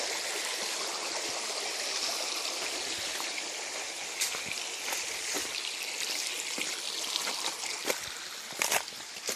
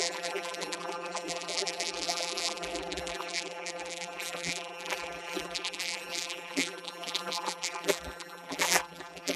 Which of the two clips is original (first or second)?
first